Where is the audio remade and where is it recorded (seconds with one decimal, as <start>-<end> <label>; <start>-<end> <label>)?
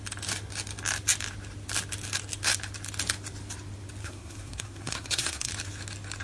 0.0-4.0 recorded; 4.0-5.5 remade; 5.5-6.2 recorded